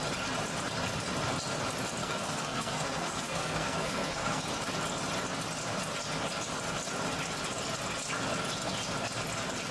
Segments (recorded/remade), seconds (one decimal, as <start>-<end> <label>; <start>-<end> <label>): 0.0-2.0 recorded; 2.0-4.4 remade; 4.4-9.7 recorded